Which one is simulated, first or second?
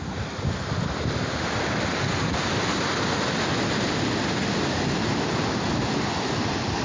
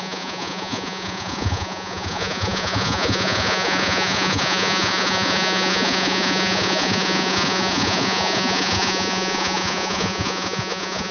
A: second